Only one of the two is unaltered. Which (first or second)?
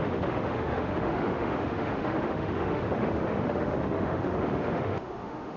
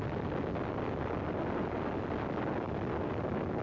second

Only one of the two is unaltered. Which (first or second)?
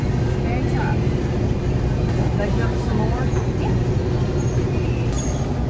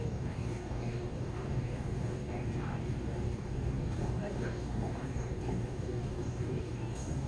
first